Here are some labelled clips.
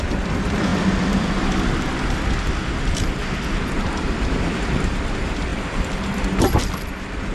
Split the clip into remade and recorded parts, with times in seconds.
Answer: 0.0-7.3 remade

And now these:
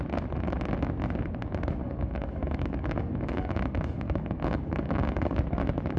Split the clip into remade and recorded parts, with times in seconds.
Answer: 0.0-1.8 recorded; 1.8-5.4 remade; 5.4-6.0 recorded

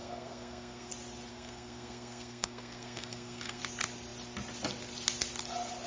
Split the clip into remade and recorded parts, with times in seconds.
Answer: 0.0-0.9 remade; 0.9-1.3 recorded; 1.3-3.6 remade; 3.6-5.9 recorded

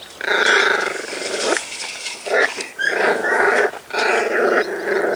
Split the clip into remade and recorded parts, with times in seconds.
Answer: 0.0-0.6 recorded; 0.6-3.7 remade; 3.7-5.2 recorded

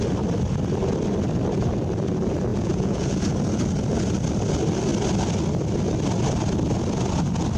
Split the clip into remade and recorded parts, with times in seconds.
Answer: 0.0-2.5 recorded; 2.5-3.2 remade; 3.2-7.6 recorded